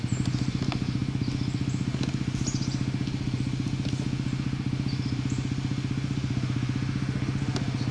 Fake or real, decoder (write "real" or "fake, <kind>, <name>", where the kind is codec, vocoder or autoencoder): real